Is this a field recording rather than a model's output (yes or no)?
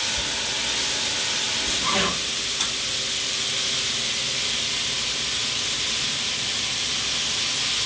yes